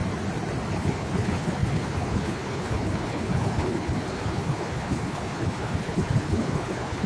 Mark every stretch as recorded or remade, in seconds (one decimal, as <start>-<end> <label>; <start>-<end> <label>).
0.0-0.7 recorded; 0.7-7.1 remade